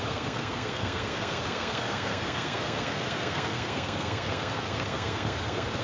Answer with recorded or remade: remade